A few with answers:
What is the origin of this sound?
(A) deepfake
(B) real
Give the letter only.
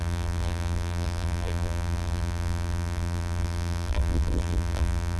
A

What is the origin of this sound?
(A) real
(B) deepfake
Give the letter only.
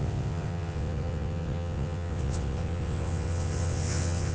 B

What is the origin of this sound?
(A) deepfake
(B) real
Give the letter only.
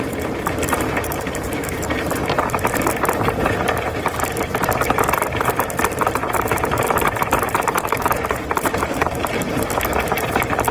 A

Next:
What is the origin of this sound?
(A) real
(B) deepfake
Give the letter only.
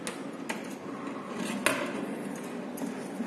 A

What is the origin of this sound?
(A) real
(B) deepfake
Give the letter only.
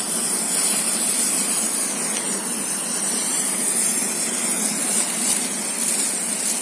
B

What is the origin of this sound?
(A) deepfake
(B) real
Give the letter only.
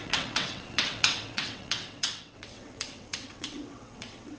A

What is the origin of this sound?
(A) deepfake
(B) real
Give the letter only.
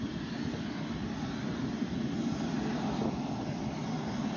B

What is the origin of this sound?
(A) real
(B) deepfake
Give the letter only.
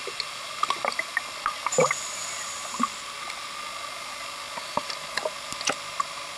A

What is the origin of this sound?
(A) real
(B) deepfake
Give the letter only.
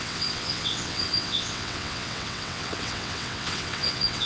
B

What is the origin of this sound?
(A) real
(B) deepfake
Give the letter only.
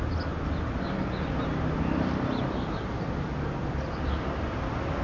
A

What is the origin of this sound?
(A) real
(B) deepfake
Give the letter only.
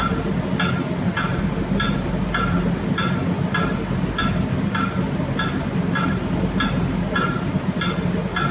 A